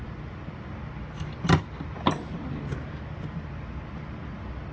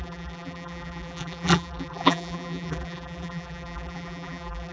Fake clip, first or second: second